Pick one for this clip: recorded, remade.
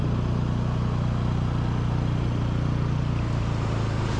recorded